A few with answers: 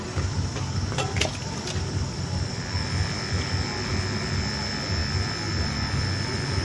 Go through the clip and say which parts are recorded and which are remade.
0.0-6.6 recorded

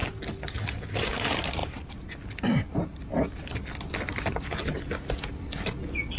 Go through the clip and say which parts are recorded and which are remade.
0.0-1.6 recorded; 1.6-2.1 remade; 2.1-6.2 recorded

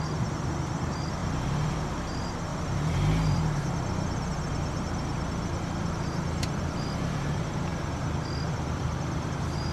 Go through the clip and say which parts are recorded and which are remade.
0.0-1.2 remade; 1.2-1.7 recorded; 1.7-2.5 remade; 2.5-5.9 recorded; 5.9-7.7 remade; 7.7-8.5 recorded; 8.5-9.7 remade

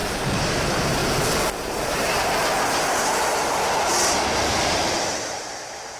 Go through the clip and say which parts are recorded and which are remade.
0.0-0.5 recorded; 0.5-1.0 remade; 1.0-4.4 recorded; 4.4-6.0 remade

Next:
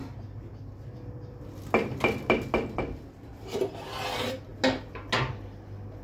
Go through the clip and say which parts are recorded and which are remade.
0.0-6.0 recorded

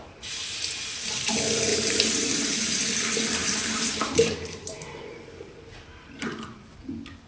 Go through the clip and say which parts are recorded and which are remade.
0.0-1.7 recorded; 1.7-2.6 remade; 2.6-3.4 recorded; 3.4-5.0 remade; 5.0-7.3 recorded

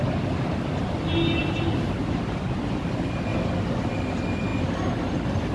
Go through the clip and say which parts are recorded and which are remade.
0.0-1.4 recorded; 1.4-2.2 remade; 2.2-3.3 recorded; 3.3-4.0 remade; 4.0-5.5 recorded